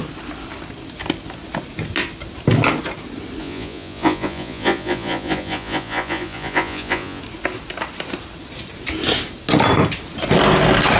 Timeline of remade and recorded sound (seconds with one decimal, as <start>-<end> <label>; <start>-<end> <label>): 0.0-3.4 recorded; 3.4-7.2 remade; 7.2-11.0 recorded